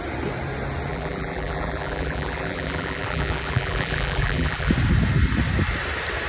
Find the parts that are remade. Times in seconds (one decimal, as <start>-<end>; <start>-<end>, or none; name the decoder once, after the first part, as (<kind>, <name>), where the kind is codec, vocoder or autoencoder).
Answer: 0.9-4.7 (vocoder, BigVGAN v2)